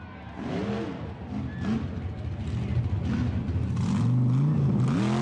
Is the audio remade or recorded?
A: recorded